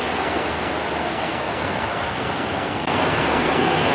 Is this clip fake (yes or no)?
yes